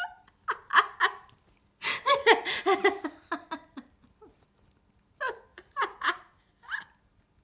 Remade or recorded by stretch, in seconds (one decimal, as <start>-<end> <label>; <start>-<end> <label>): 0.0-5.5 recorded; 5.5-6.5 remade; 6.5-7.4 recorded